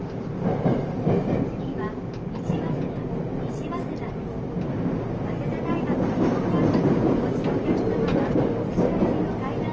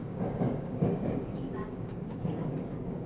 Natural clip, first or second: first